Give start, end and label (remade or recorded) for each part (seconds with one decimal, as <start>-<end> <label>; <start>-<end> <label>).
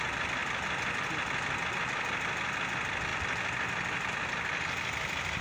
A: 0.0-5.4 recorded